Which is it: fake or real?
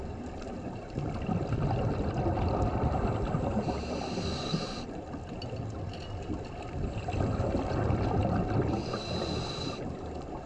real